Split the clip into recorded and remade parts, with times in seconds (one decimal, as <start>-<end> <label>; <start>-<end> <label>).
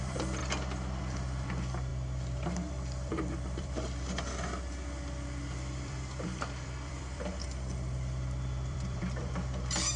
0.0-0.4 remade; 0.4-1.0 recorded; 1.0-10.0 remade